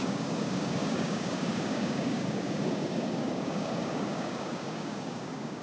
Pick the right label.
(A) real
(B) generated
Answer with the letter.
B